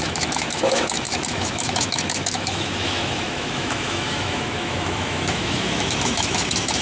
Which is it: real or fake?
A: fake